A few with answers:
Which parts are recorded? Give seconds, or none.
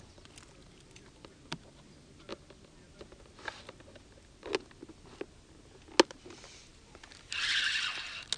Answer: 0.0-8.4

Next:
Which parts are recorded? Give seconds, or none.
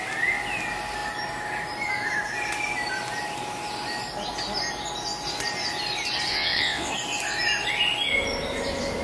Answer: 0.0-6.3; 6.9-9.0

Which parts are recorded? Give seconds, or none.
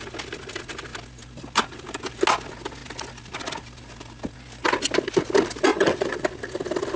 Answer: 0.0-5.7; 6.2-7.0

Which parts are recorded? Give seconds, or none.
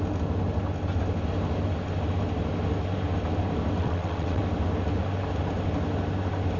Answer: 0.0-3.8; 4.4-6.6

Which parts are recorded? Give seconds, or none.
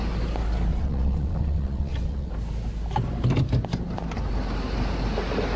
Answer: 0.0-0.7; 2.3-5.6